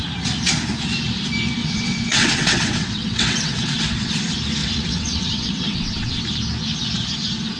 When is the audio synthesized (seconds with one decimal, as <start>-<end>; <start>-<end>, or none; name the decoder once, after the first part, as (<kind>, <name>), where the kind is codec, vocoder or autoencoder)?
1.6-4.1 (vocoder, WaveNeXt); 4.6-6.2